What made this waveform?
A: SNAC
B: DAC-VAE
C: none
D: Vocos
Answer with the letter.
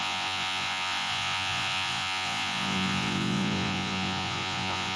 D